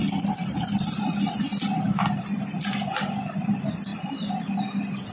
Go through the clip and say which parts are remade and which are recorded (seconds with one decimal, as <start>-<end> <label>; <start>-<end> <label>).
0.0-3.9 recorded; 3.9-4.4 remade; 4.4-5.1 recorded